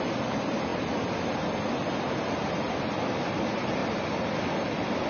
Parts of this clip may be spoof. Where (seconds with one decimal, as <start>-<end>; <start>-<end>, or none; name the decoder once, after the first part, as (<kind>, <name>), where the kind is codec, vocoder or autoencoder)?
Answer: none